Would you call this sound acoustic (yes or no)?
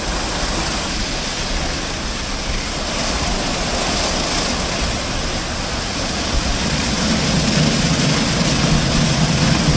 yes